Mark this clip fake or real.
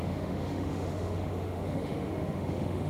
fake